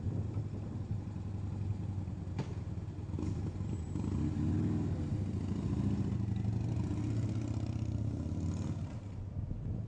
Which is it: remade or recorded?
recorded